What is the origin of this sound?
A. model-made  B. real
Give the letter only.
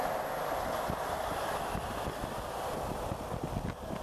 B